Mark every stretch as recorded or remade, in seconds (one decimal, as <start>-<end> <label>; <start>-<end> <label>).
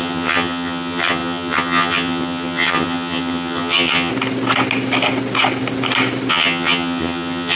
0.0-4.1 remade; 4.1-6.3 recorded; 6.3-7.6 remade